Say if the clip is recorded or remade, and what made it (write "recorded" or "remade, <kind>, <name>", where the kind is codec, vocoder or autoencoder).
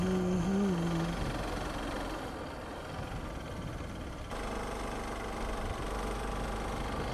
recorded